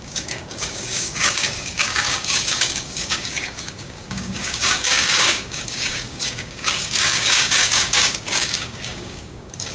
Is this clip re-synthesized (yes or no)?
yes